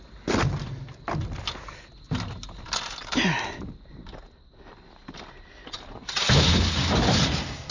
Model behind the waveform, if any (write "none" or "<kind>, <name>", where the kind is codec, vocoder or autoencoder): none